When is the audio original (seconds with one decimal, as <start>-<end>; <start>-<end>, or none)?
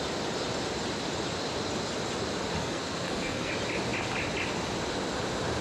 0.0-2.6; 3.5-5.6